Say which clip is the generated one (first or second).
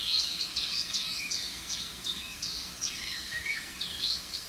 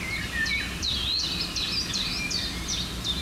first